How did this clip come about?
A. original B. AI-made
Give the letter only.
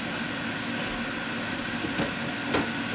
A